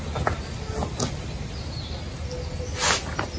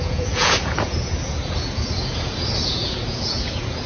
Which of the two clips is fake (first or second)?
second